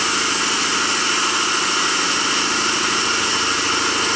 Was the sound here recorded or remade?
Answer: recorded